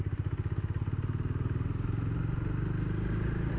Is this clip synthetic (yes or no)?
no